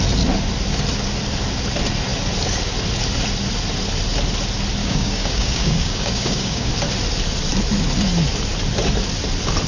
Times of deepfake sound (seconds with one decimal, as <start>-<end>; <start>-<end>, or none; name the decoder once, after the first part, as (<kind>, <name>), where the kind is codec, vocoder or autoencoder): 4.8-6.7 (codec, DAC)